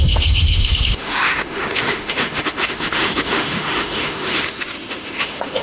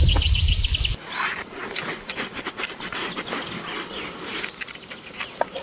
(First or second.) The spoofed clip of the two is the first